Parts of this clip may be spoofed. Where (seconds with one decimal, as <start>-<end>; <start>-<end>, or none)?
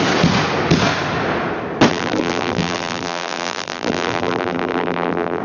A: 1.9-5.4